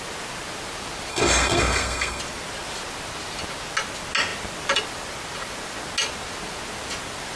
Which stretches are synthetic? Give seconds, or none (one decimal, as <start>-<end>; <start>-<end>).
1.1-2.2